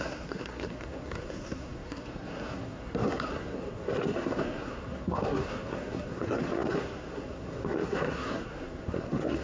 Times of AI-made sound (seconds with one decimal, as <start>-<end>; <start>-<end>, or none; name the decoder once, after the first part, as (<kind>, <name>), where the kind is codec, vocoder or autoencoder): 0.0-9.4 (codec, SNAC)